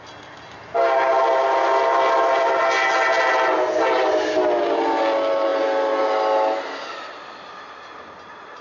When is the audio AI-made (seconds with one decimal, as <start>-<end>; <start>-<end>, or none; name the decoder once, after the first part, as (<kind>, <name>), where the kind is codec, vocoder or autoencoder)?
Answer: none